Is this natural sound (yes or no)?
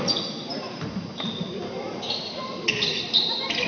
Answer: yes